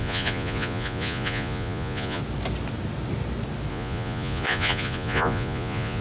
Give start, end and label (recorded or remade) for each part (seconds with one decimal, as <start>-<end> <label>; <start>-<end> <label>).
0.0-2.2 remade; 2.2-3.7 recorded; 3.7-6.0 remade